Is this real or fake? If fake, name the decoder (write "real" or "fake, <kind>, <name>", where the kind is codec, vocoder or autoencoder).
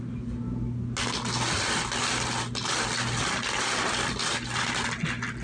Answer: real